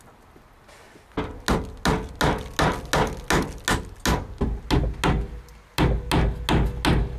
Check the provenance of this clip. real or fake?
real